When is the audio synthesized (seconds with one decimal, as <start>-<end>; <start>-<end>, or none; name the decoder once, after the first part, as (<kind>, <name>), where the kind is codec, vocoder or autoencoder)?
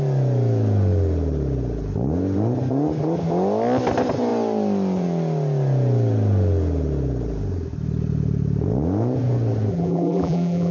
9.7-10.7 (vocoder, BigVGAN v2)